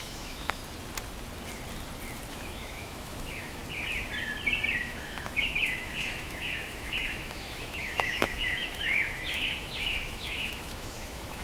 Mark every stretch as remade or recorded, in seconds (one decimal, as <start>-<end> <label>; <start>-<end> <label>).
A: 0.0-0.6 remade; 0.6-2.3 recorded; 2.3-3.6 remade; 3.6-4.8 recorded; 4.8-11.4 remade